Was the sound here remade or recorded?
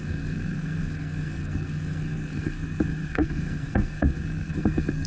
remade